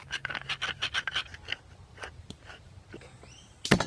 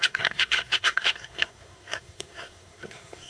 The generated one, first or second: second